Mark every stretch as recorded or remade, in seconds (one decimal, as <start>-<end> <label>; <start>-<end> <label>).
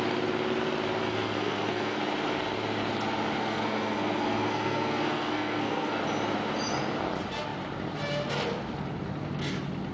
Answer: 0.0-1.0 recorded; 1.0-2.0 remade; 2.0-3.4 recorded; 3.4-6.0 remade; 6.0-9.9 recorded